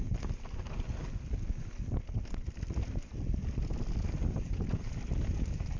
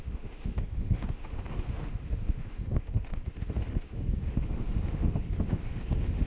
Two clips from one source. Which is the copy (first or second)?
second